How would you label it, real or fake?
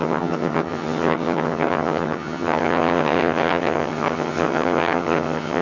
fake